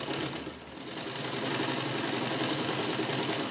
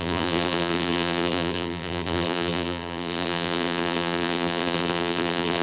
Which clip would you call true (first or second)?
first